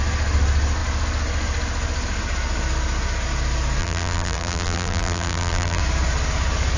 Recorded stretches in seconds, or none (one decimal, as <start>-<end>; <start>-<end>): 0.0-3.8; 5.8-6.8